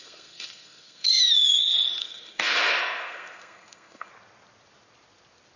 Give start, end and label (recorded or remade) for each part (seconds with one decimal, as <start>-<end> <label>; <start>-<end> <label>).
0.0-1.2 remade; 1.2-2.0 recorded; 2.0-4.1 remade; 4.1-5.6 recorded

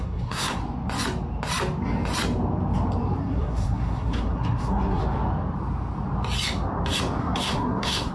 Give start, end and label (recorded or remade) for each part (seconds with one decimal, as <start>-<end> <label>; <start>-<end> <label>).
0.0-0.6 remade; 0.6-3.2 recorded; 3.2-5.0 remade; 5.0-7.2 recorded; 7.2-8.1 remade

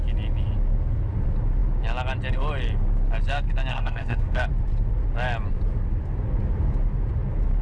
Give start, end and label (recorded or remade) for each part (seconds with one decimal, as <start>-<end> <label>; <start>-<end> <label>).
0.0-3.7 recorded; 3.7-4.4 remade; 4.4-7.6 recorded

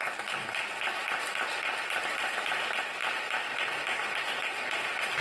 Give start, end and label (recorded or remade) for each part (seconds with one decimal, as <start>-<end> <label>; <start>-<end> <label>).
0.0-5.2 recorded

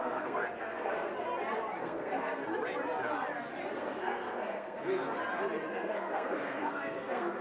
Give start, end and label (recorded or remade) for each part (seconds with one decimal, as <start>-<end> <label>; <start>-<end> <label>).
0.0-1.1 remade; 1.1-1.8 recorded; 1.8-2.4 remade; 2.4-3.7 recorded; 3.7-5.2 remade; 5.2-5.7 recorded; 5.7-7.4 remade

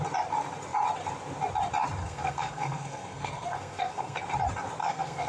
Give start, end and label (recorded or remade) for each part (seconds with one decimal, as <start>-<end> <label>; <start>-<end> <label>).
0.0-2.0 recorded; 2.0-4.2 remade; 4.2-4.8 recorded; 4.8-5.3 remade

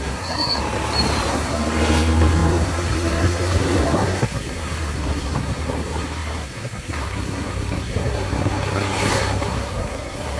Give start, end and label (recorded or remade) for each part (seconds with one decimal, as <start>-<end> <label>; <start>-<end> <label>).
0.0-0.6 remade; 0.6-1.3 recorded; 1.3-10.4 remade